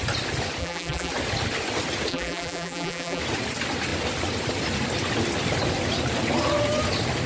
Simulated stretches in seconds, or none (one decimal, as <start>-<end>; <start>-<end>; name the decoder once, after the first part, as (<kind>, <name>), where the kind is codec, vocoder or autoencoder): 0.6-1.1 (vocoder, BigVGAN v2); 2.1-3.2